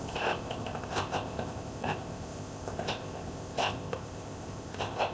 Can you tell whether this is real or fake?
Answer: fake